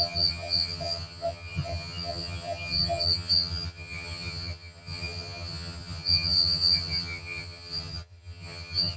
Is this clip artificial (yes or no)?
yes